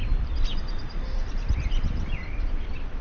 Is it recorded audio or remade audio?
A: recorded